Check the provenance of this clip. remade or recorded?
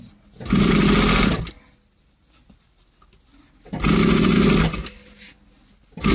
recorded